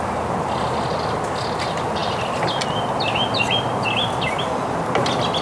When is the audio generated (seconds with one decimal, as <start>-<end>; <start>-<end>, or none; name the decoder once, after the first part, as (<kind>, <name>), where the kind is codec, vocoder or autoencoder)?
none